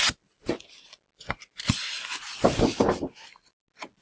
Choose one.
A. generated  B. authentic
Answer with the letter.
B